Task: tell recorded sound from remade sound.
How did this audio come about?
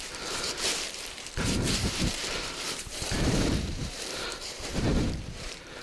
remade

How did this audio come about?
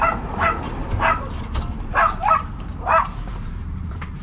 remade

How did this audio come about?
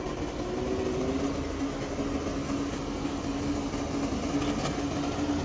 recorded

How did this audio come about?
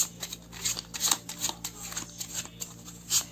recorded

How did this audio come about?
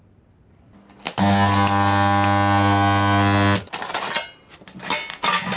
recorded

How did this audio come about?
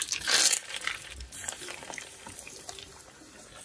remade